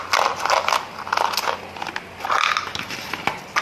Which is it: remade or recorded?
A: recorded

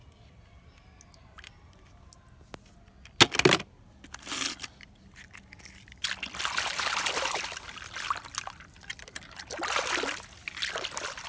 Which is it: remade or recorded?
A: recorded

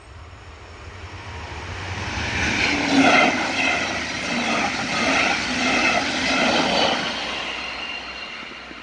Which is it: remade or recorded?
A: recorded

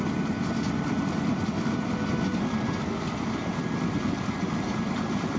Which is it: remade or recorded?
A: recorded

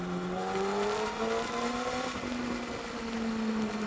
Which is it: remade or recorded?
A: recorded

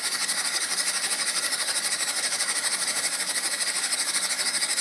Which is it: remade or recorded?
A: remade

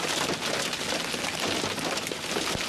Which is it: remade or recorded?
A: recorded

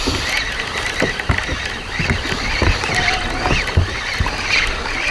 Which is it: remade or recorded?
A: recorded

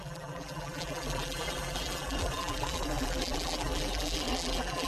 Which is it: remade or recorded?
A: remade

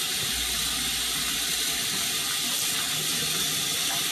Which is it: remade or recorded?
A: recorded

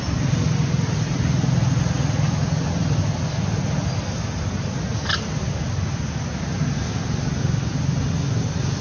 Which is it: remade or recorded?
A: recorded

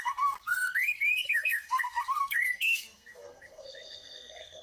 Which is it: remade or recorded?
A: remade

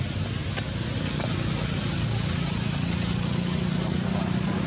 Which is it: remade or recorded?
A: recorded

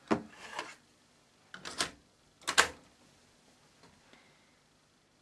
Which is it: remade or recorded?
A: recorded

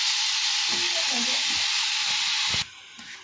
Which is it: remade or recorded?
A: recorded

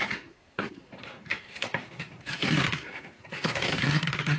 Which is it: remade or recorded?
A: remade